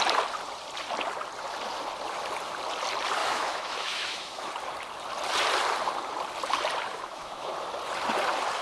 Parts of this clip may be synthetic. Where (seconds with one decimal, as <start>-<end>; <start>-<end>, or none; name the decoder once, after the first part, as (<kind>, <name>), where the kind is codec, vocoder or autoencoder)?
3.2-4.5 (autoencoder, DAC-VAE); 6.9-7.5

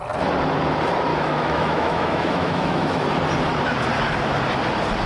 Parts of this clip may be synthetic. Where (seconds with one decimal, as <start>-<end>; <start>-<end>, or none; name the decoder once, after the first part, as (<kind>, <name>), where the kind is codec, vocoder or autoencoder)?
1.1-3.0 (autoencoder, DAC-VAE)

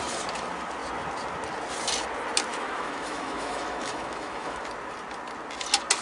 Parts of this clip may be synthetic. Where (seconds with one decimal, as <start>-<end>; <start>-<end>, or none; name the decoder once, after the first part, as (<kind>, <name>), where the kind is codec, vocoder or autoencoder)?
2.5-4.6 (autoencoder, DAC-VAE)

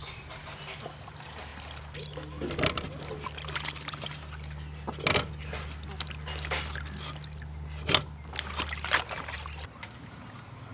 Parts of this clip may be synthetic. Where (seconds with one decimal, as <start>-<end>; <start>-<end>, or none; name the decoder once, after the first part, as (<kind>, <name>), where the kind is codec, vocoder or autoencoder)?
none

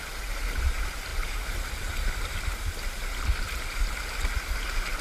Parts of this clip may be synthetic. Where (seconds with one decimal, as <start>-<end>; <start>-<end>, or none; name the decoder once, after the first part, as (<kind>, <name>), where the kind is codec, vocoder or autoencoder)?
none

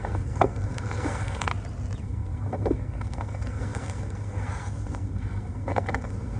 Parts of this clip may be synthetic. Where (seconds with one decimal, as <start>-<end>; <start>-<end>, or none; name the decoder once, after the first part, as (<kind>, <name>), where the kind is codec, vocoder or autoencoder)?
0.0-1.5 (codec, SNAC); 2.0-6.4

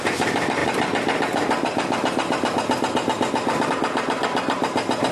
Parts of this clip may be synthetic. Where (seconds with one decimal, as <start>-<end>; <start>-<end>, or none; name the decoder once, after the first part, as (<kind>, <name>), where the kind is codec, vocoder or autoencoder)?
0.6-3.7 (vocoder, BigVGAN v2)

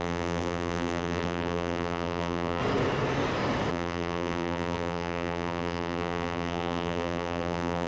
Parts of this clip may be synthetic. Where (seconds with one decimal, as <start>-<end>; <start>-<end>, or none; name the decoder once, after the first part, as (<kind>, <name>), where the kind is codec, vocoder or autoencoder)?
0.0-2.6 (vocoder, BigVGAN v2); 3.7-7.9